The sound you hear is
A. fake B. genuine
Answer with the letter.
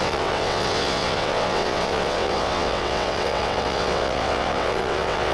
A